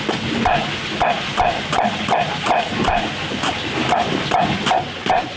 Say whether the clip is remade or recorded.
recorded